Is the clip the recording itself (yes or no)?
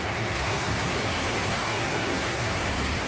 no